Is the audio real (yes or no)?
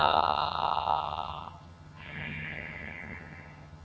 no